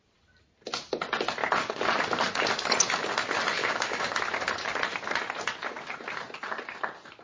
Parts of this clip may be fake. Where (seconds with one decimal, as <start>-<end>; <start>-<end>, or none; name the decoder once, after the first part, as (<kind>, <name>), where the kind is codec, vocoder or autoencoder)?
3.6-4.2 (codec, DAC)